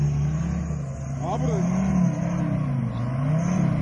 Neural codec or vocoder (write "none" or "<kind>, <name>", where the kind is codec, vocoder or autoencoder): none